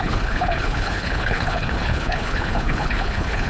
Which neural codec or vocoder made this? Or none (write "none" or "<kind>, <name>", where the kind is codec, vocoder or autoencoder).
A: codec, HILCodec